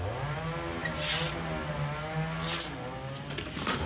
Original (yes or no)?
yes